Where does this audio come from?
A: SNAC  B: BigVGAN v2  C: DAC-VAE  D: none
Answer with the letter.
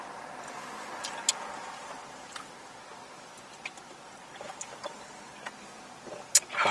D